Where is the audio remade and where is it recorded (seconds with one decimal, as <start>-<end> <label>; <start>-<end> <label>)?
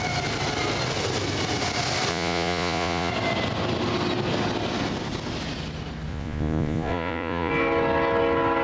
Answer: 0.0-2.1 recorded; 2.1-3.1 remade; 3.1-6.1 recorded; 6.1-7.5 remade; 7.5-8.6 recorded